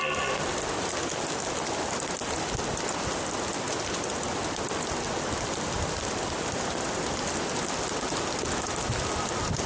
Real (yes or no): yes